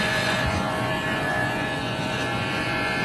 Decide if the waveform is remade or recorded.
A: remade